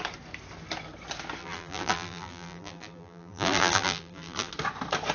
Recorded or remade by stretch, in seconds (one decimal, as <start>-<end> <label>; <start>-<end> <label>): 0.0-1.4 recorded; 1.4-4.5 remade; 4.5-5.1 recorded